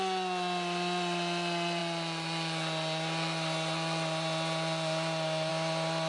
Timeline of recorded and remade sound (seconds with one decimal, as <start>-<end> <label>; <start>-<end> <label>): 0.0-6.1 recorded